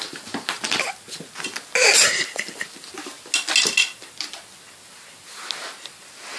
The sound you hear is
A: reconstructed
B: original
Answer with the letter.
B